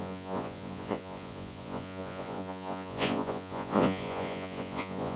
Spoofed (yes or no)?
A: yes